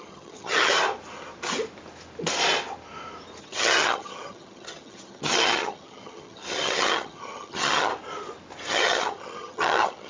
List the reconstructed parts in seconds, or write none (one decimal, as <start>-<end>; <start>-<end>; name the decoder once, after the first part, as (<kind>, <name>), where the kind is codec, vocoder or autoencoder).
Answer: 0.0-0.7 (vocoder, HiFi-GAN); 3.4-7.9; 8.7-10.1